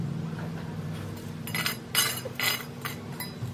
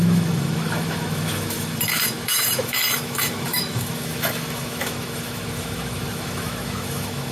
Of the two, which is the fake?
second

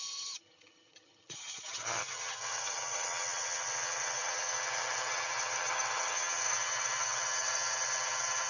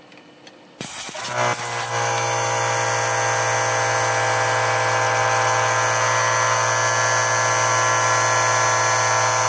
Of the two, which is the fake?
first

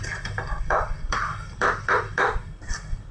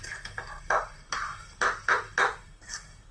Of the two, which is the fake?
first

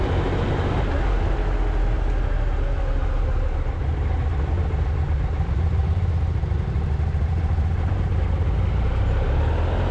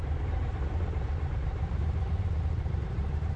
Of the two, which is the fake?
second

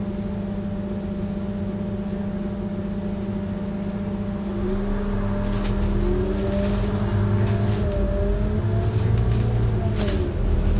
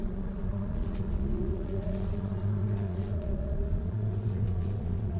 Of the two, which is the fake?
second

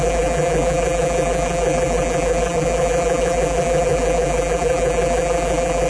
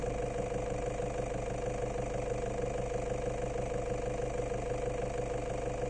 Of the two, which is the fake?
first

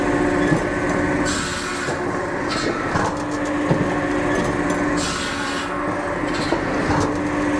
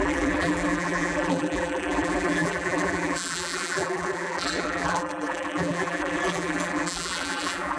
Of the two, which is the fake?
second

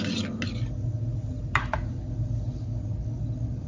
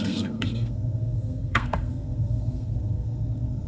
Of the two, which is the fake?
second